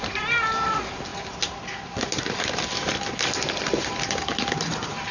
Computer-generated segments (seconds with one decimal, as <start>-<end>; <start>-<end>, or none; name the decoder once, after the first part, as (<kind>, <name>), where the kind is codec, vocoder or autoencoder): 0.0-1.1 (vocoder, BigVGAN v2); 1.7-5.1

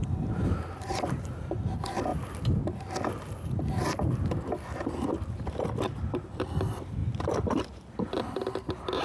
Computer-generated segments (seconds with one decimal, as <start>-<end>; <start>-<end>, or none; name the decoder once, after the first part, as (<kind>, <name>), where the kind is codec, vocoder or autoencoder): 0.0-2.1 (vocoder, BigVGAN v2); 5.4-7.0; 7.5-9.0

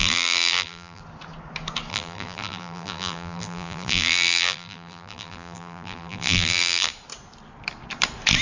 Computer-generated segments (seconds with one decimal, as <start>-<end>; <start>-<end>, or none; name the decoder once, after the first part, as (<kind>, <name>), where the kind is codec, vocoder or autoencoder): 0.0-1.0 (vocoder, BigVGAN v2); 1.9-6.9

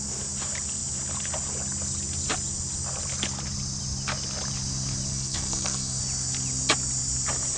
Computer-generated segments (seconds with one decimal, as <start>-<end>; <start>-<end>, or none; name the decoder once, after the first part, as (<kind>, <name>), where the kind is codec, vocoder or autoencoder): 5.1-6.0 (codec, SNAC)

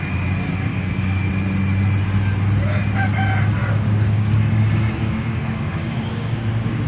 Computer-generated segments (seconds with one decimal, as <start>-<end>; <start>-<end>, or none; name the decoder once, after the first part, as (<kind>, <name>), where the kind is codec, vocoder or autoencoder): 0.7-1.3 (codec, DAC); 3.6-6.5

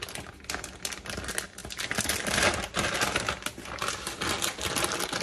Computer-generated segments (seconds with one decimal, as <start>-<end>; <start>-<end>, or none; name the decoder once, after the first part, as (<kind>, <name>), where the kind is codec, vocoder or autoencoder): none

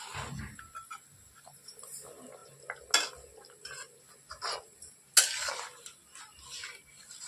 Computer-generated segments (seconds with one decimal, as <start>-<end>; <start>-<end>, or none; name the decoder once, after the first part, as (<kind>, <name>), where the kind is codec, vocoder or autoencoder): none